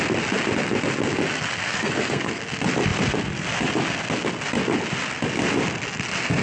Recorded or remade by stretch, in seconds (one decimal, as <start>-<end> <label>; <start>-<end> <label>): 0.0-1.6 recorded; 1.6-2.4 remade; 2.4-6.4 recorded